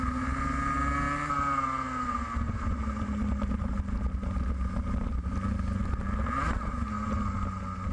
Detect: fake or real real